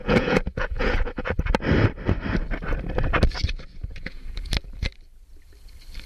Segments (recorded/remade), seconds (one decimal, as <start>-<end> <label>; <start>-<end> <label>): 0.0-1.3 remade; 1.3-3.9 recorded; 3.9-4.5 remade; 4.5-6.1 recorded